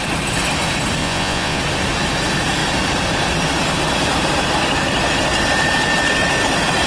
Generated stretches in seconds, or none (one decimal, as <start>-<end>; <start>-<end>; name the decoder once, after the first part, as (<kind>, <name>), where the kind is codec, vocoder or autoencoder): 1.0-1.6 (vocoder, Vocos)